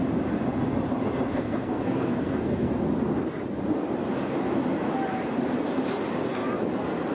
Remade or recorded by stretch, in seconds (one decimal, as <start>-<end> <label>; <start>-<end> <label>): 0.0-1.3 recorded; 1.3-2.7 remade; 2.7-7.1 recorded